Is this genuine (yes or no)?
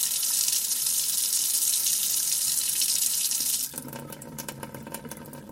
no